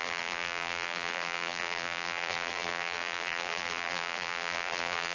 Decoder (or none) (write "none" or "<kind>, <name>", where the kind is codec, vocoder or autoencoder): vocoder, BigVGAN v2